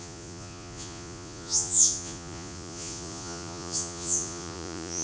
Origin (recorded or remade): remade